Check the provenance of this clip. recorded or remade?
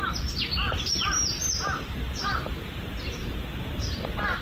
remade